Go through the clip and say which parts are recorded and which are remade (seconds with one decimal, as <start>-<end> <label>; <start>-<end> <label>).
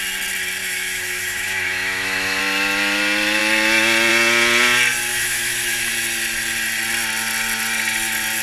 0.0-0.6 recorded; 0.6-2.4 remade; 2.4-5.1 recorded; 5.1-5.9 remade; 5.9-8.4 recorded